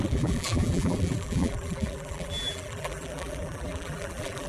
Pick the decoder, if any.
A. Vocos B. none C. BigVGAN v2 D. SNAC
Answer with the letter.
C